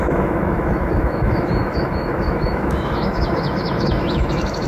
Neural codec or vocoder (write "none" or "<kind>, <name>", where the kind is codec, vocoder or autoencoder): autoencoder, DAC-VAE